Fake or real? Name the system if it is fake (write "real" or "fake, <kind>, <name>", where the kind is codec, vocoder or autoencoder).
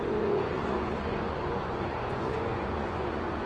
fake, vocoder, Vocos